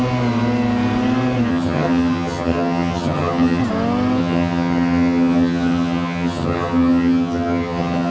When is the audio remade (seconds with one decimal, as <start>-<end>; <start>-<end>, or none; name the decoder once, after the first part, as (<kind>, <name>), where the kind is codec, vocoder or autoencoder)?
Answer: 1.5-3.6 (vocoder, HiFi-GAN); 4.2-8.1